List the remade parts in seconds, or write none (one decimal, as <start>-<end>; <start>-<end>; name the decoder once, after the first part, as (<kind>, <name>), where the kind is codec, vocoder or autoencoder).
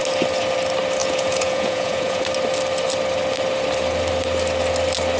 1.0-2.2 (vocoder, Vocos)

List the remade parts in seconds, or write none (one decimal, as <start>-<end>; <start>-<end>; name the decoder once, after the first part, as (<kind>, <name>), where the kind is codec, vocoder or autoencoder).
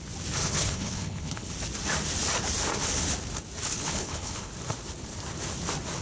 0.4-1.5 (codec, HILCodec); 3.7-4.5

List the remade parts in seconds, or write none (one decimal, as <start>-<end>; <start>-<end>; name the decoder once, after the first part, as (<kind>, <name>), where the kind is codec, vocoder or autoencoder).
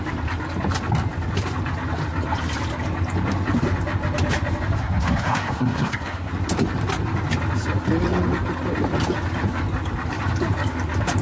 4.8-6.3 (codec, SNAC)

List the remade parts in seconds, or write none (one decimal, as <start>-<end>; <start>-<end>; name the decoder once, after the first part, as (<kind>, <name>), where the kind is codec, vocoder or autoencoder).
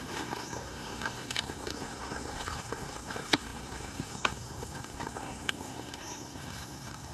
0.0-7.1 (codec, SNAC)